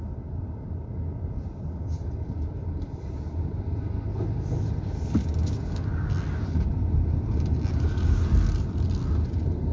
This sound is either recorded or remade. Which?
recorded